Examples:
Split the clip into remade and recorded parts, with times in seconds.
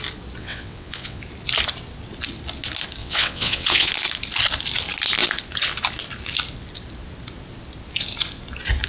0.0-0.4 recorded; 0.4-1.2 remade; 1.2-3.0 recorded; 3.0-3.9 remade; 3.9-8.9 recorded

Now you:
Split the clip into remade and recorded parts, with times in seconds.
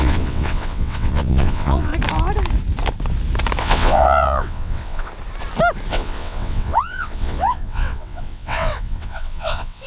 0.0-1.9 remade; 1.9-3.6 recorded; 3.6-5.1 remade; 5.1-5.9 recorded; 5.9-9.9 remade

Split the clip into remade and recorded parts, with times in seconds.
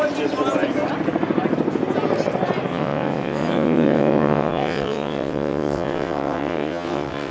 0.0-2.7 recorded; 2.7-7.3 remade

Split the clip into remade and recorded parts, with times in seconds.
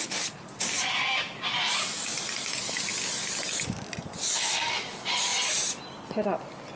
0.0-6.8 recorded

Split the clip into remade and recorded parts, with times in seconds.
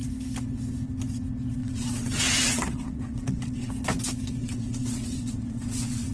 0.0-1.6 recorded; 1.6-3.7 remade; 3.7-4.4 recorded; 4.4-6.1 remade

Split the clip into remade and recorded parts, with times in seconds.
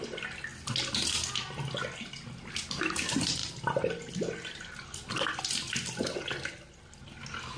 0.0-7.6 recorded